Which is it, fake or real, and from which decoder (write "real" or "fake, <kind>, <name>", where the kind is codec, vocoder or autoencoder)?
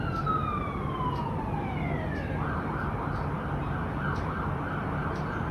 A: real